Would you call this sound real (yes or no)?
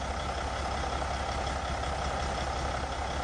yes